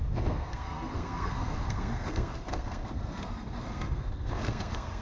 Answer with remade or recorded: remade